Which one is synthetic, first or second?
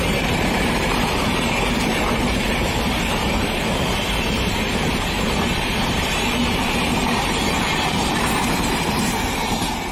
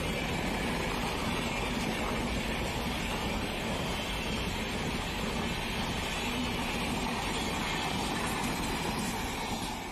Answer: first